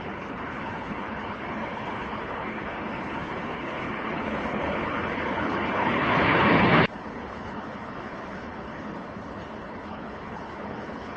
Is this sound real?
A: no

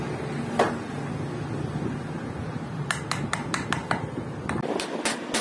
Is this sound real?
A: yes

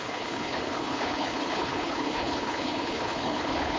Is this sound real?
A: no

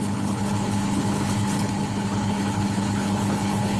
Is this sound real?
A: no